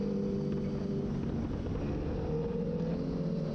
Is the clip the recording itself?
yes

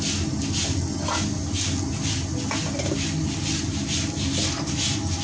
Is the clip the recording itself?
yes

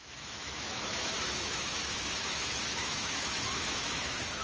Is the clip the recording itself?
no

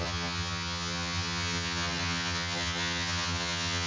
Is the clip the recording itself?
no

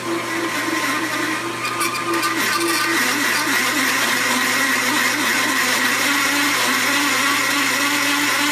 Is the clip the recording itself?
yes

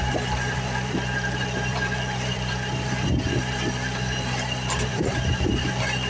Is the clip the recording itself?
no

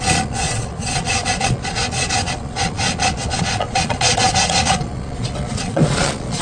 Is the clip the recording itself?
no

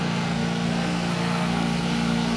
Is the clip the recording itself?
no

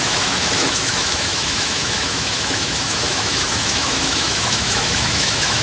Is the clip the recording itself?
no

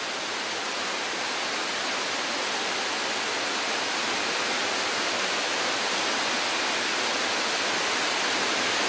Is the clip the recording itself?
yes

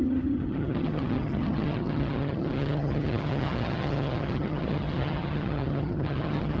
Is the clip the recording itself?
no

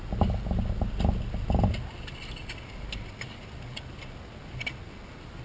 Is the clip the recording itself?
yes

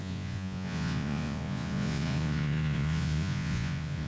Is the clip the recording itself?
no